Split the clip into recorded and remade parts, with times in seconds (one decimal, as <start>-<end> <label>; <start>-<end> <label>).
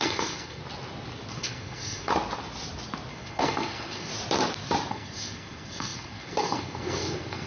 0.0-0.6 remade; 0.6-1.3 recorded; 1.3-2.1 remade; 2.1-3.1 recorded; 3.1-4.1 remade; 4.1-4.9 recorded; 4.9-7.5 remade